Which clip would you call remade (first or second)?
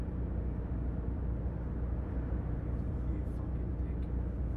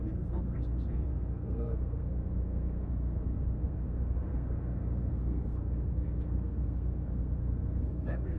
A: second